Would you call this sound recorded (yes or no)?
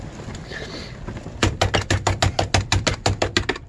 yes